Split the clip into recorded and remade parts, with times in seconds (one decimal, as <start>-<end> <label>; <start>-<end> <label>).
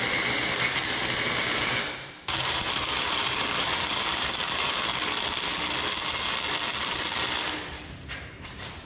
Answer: 0.0-4.9 remade; 4.9-8.1 recorded; 8.1-8.9 remade